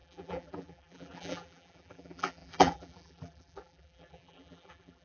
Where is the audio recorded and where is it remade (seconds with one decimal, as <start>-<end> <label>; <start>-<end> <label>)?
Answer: 0.0-5.0 remade